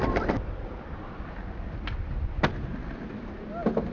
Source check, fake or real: real